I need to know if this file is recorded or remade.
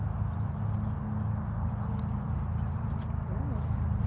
recorded